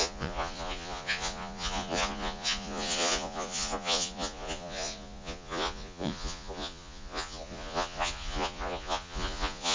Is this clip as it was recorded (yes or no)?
no